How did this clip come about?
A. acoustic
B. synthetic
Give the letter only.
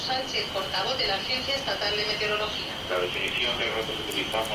A